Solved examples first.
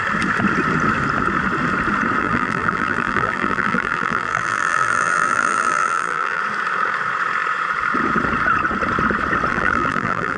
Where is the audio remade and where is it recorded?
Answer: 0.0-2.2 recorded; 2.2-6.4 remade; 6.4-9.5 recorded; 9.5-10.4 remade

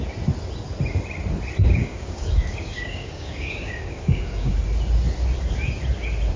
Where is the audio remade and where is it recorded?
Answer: 0.0-1.8 recorded; 1.8-4.5 remade; 4.5-6.4 recorded

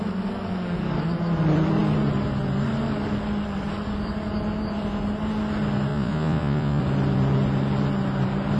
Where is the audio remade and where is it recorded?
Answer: 0.0-5.9 recorded; 5.9-6.8 remade; 6.8-8.6 recorded